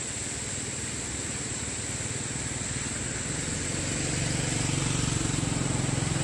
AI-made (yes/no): no